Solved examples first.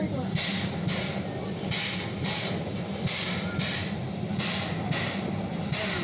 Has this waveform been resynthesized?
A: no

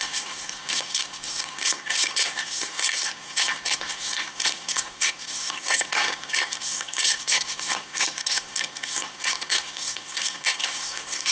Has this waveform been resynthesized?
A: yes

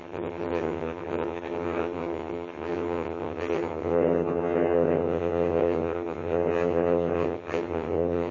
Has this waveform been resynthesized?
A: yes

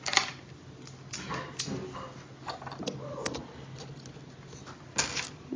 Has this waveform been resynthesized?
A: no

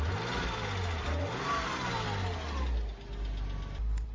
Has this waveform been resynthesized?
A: no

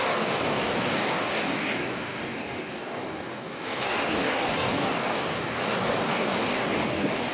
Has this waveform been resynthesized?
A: yes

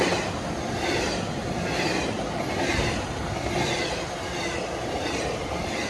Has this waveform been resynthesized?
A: no